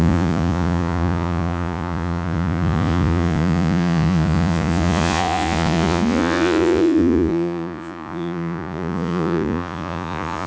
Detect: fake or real fake